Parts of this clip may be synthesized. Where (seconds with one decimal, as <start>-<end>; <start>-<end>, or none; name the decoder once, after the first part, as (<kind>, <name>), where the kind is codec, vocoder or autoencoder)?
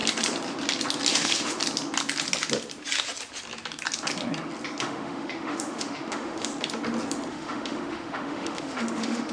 1.1-1.6 (autoencoder, DAC-VAE); 4.8-6.5; 7.3-9.3